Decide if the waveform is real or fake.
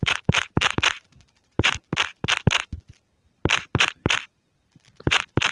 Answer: fake